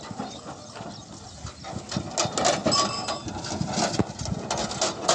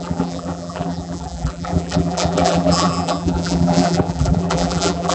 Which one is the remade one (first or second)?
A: second